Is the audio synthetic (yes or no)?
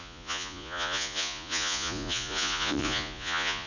yes